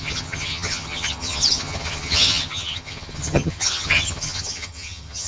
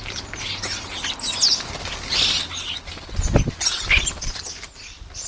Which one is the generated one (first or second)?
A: first